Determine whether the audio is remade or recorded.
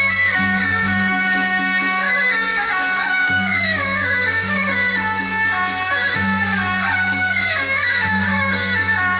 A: remade